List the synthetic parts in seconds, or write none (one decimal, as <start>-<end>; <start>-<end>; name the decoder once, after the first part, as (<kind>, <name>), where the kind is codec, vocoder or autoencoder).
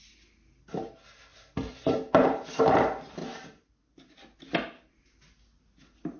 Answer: 1.3-2.6 (vocoder, BigVGAN v2); 3.2-3.7